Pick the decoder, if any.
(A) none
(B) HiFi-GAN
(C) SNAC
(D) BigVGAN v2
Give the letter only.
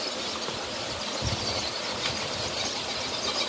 A